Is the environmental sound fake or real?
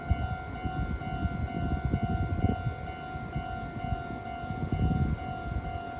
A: real